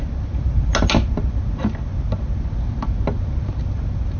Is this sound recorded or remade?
recorded